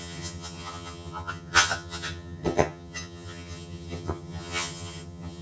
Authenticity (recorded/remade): remade